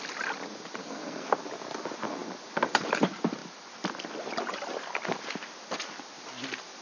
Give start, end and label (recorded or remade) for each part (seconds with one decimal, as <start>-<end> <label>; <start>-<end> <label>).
0.0-0.8 recorded; 0.8-1.3 remade; 1.3-6.8 recorded